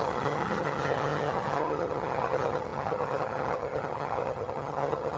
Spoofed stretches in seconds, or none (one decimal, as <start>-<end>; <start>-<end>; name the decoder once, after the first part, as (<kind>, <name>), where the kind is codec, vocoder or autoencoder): 0.0-5.2 (vocoder, HiFi-GAN)